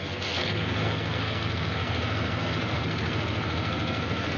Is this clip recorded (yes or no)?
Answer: no